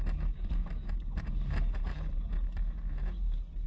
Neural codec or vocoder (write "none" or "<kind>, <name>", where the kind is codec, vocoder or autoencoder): none